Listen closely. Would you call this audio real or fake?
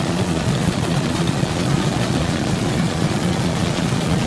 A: fake